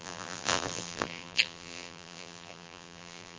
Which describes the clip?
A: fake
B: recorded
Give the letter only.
A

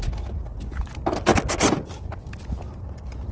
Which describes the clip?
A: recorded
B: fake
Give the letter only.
A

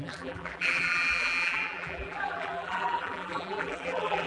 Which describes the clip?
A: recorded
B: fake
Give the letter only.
B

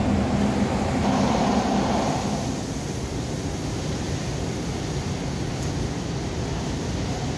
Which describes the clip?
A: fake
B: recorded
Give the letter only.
B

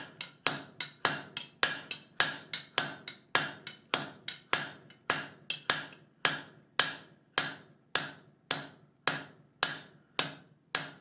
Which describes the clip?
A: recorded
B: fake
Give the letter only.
A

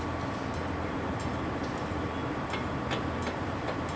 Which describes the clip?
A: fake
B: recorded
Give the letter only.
B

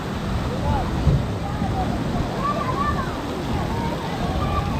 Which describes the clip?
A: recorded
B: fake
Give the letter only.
A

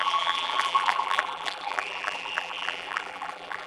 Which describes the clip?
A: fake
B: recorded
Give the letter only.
A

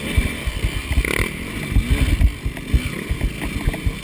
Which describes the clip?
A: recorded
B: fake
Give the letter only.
A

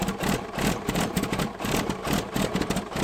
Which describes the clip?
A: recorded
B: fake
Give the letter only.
B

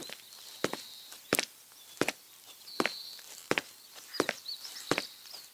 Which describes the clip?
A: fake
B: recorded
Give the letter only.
A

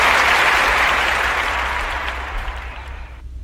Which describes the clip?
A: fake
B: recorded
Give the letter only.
A